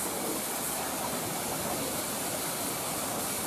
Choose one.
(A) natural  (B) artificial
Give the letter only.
A